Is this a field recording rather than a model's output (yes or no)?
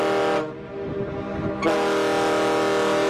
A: yes